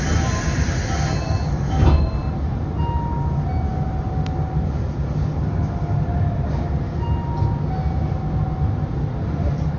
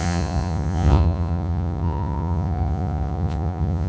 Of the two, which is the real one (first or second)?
first